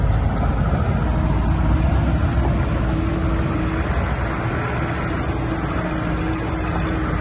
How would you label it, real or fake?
real